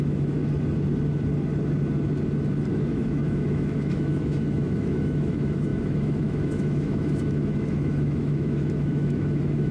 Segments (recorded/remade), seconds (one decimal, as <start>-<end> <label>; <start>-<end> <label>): 0.0-0.4 remade; 0.4-2.7 recorded; 2.7-9.7 remade